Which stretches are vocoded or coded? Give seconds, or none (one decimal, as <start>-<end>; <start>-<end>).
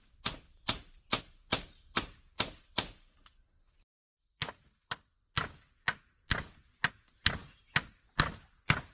none